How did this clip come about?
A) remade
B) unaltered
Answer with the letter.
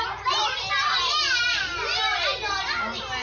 B